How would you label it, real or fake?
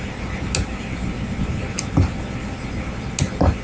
real